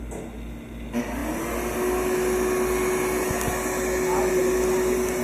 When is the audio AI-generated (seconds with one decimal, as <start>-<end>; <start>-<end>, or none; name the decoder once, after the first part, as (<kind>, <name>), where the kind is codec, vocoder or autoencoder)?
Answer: none